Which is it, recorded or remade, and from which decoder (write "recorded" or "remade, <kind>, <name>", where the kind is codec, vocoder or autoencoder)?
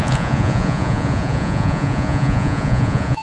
remade, vocoder, Vocos